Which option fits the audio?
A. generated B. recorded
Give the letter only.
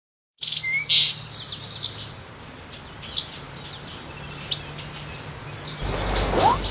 B